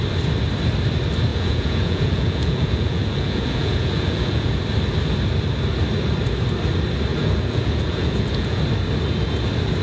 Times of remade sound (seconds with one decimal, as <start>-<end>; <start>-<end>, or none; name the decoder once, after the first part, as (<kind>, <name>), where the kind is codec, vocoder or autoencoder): 1.3-4.6 (vocoder, Vocos); 7.1-8.6